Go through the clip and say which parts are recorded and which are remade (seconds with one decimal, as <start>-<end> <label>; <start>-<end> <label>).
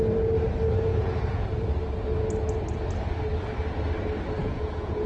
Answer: 0.0-0.9 recorded; 0.9-1.7 remade; 1.7-4.4 recorded; 4.4-5.1 remade